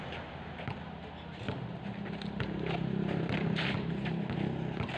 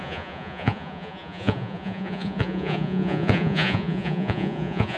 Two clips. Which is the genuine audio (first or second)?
first